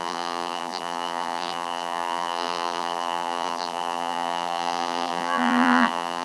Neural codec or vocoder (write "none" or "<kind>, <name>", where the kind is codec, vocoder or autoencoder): vocoder, BigVGAN v2